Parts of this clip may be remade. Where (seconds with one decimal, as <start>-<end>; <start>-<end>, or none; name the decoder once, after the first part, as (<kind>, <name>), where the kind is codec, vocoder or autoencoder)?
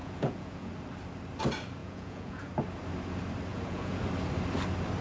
0.0-0.7 (vocoder, Vocos); 1.8-2.5; 3.5-4.0